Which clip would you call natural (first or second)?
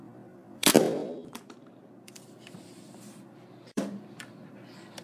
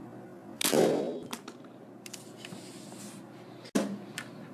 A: second